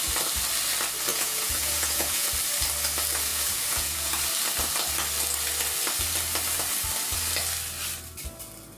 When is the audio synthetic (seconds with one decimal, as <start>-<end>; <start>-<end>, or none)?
1.1-2.3; 3.3-4.1